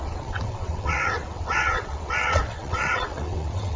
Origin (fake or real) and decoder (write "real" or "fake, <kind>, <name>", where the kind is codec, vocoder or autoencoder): fake, vocoder, WaveNeXt